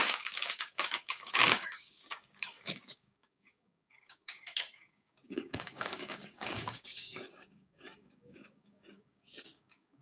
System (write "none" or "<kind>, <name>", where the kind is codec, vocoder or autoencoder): codec, DAC